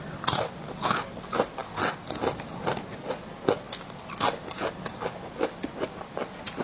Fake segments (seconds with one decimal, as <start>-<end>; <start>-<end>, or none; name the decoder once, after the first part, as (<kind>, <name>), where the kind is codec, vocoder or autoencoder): none